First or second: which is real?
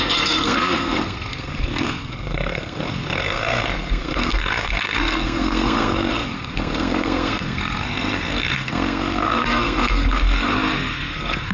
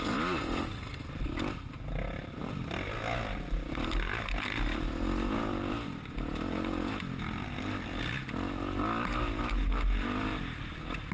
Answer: second